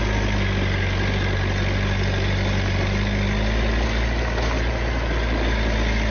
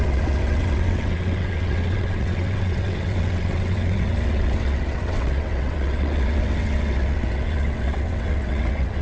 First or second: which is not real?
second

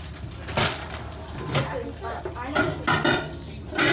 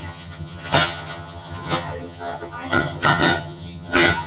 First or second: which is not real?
second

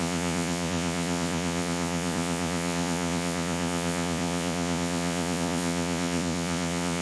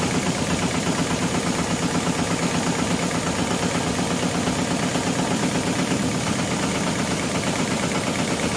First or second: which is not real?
first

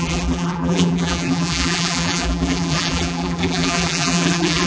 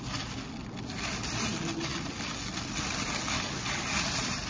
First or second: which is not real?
first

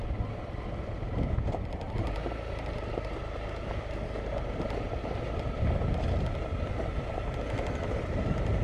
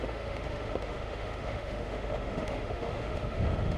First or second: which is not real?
second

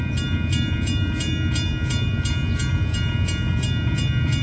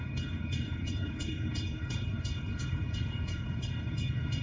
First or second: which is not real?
second